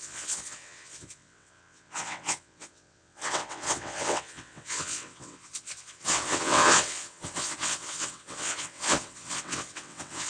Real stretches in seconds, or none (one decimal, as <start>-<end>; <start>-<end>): none